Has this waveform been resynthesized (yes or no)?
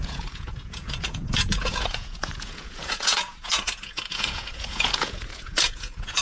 yes